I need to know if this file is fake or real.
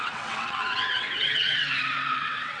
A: fake